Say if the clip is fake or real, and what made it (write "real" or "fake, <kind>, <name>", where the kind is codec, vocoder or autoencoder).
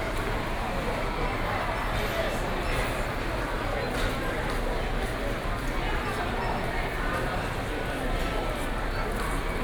real